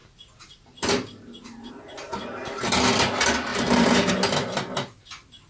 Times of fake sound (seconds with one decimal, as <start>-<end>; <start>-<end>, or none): 0.0-1.7; 3.5-4.1